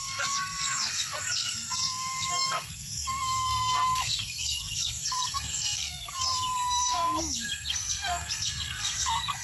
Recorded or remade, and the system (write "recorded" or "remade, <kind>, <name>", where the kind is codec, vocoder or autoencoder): remade, codec, SNAC